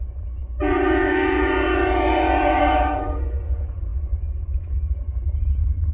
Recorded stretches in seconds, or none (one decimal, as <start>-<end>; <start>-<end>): none